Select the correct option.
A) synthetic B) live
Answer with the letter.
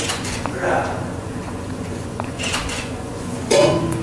A